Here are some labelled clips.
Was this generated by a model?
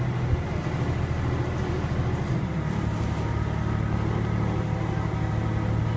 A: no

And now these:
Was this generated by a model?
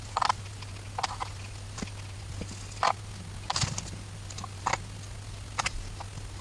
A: no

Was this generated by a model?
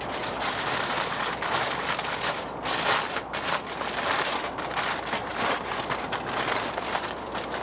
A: no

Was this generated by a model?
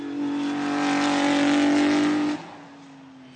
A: no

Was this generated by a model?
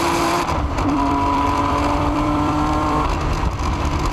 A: yes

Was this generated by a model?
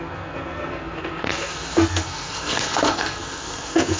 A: yes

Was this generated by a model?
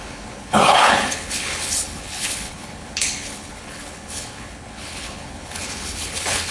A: yes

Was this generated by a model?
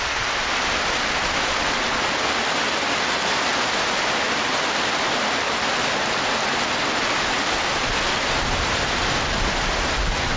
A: no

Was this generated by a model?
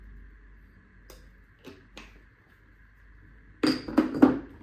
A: no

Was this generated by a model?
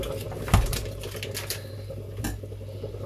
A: no